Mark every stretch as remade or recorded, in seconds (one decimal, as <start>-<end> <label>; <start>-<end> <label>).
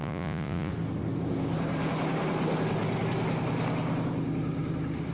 0.0-0.7 remade; 0.7-5.1 recorded